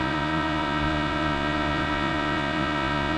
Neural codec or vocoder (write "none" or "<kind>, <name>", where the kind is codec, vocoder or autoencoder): vocoder, Vocos